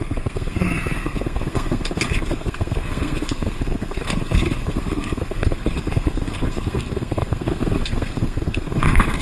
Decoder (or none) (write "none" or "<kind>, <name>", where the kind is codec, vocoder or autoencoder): codec, SNAC